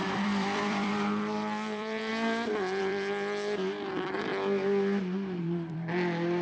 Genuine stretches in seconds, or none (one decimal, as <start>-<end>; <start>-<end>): 2.1-2.8; 4.3-5.4